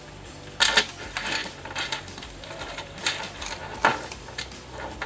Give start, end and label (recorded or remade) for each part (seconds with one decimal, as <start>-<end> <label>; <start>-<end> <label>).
0.0-1.4 recorded; 1.4-3.5 remade; 3.5-3.9 recorded; 3.9-5.1 remade